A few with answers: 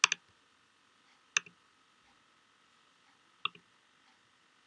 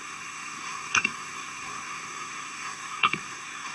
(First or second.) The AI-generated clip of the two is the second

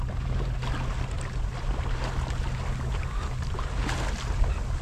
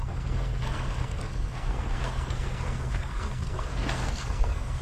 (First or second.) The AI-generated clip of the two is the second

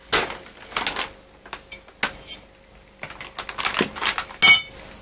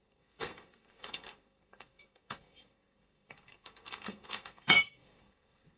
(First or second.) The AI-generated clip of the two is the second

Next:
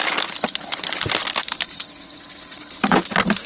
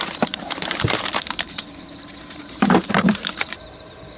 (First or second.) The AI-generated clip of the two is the second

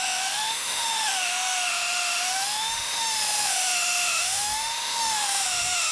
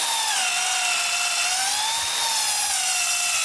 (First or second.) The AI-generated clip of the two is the first